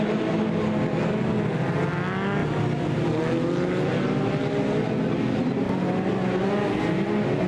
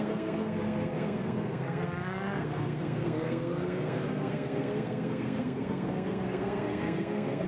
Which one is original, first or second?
first